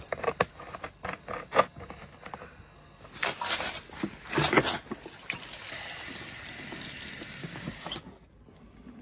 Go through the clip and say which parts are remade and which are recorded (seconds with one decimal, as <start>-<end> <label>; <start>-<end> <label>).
0.0-7.4 recorded; 7.4-8.0 remade; 8.0-9.0 recorded